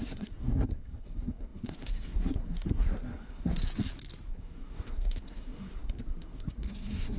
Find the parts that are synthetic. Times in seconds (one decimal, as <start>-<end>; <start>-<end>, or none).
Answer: 0.0-3.6; 4.3-7.2